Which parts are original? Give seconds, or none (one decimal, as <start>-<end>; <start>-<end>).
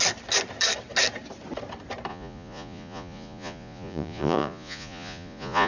0.0-2.1